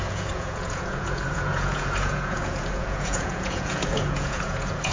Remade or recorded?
remade